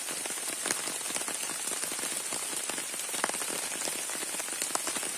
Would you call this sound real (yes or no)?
yes